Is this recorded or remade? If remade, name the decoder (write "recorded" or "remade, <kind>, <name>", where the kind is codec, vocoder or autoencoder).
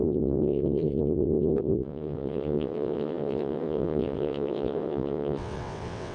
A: remade, vocoder, WaveNeXt